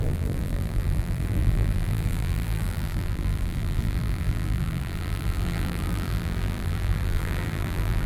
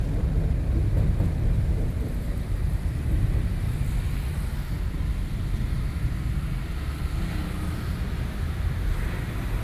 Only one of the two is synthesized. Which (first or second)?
first